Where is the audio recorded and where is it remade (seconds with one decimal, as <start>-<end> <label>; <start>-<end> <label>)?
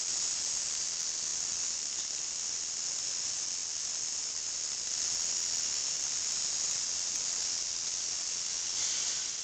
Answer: 0.0-9.4 recorded